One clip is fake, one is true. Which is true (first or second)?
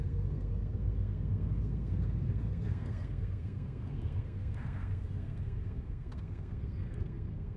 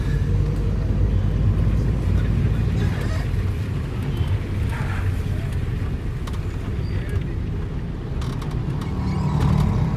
second